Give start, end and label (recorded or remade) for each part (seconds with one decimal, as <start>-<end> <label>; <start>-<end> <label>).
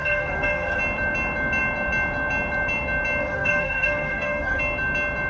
0.0-0.8 remade; 0.8-3.2 recorded; 3.2-4.6 remade; 4.6-5.3 recorded